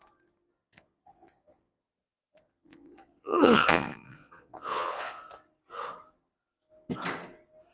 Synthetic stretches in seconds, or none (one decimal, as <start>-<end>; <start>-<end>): 0.6-5.2